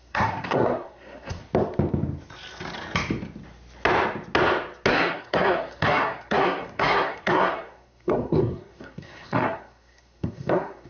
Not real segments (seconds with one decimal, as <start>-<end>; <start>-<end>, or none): 0.0-1.4; 4.9-10.9